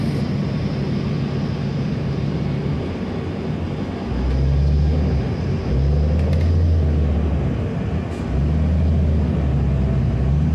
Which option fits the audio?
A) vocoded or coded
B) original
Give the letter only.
B